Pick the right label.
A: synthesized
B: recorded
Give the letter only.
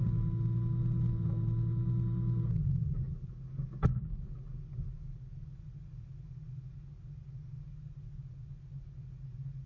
B